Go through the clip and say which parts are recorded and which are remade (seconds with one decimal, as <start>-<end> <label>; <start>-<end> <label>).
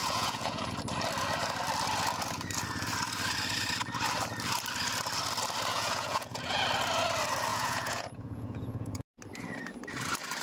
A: 0.0-0.7 remade; 0.7-5.7 recorded; 5.7-6.6 remade; 6.6-7.5 recorded; 7.5-9.1 remade; 9.1-10.4 recorded